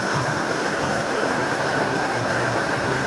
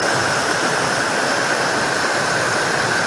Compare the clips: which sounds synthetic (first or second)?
first